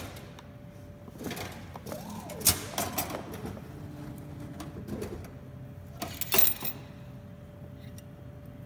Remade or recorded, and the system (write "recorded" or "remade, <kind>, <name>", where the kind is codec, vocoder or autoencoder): recorded